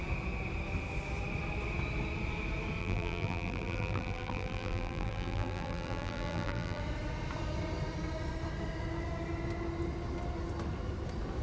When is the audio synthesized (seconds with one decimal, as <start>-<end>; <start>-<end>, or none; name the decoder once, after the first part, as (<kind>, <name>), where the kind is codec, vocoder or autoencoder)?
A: 2.8-6.8 (vocoder, BigVGAN v2)